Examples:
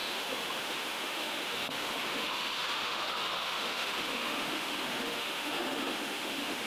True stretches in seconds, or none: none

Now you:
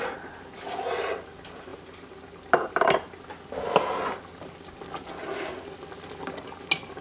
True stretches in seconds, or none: 0.0-7.0

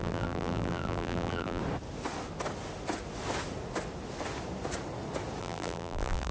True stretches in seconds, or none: 1.6-5.4

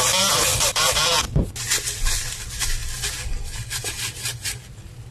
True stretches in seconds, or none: 0.0-5.1